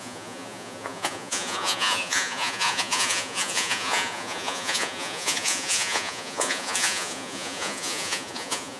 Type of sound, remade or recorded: remade